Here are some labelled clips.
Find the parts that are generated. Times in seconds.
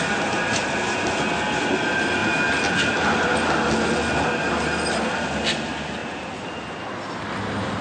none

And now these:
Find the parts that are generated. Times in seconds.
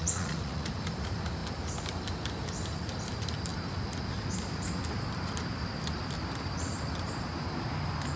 0.0-0.7 (vocoder, Vocos)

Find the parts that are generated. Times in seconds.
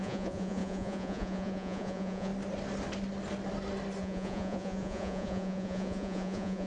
0.0-2.3 (vocoder, Vocos); 4.0-6.7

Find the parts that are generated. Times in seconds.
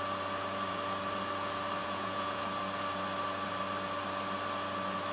1.8-2.4 (vocoder, Vocos)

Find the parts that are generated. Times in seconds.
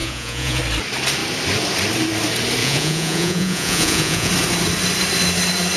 0.0-0.6 (vocoder, Vocos); 2.6-4.3